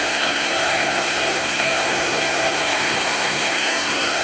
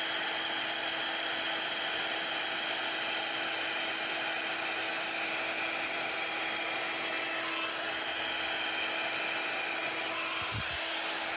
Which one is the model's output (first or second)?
first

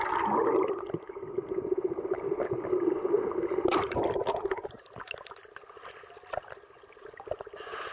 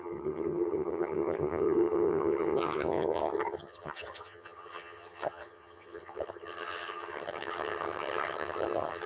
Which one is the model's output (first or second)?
second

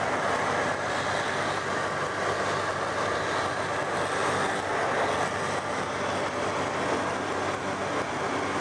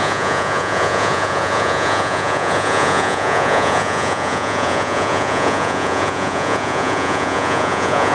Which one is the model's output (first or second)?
second